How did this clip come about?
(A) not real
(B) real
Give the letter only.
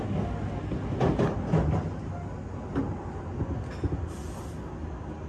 B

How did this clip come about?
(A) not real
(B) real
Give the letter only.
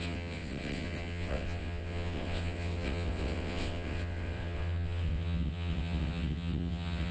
A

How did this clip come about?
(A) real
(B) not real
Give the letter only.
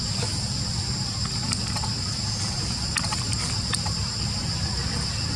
A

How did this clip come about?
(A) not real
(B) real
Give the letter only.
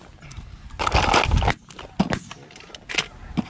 B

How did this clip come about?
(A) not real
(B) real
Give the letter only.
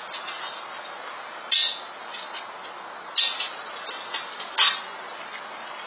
B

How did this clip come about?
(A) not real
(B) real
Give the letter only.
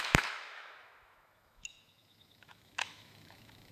A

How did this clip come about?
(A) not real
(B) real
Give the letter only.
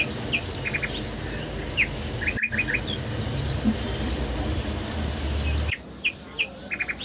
B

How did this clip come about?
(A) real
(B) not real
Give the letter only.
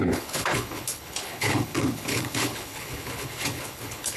B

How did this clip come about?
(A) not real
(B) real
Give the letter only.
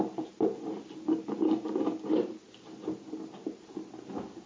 B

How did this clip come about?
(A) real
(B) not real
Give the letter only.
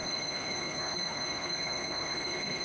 B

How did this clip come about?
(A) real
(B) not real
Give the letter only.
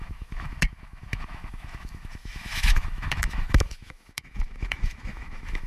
B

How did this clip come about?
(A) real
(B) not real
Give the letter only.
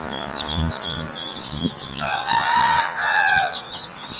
B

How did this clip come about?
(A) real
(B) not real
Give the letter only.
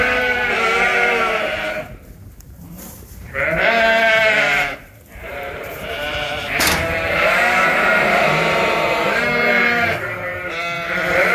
B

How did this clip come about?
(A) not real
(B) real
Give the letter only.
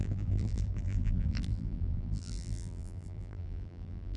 A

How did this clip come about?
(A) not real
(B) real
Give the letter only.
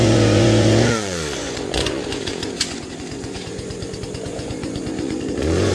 A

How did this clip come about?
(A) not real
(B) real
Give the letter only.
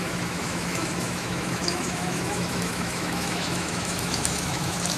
A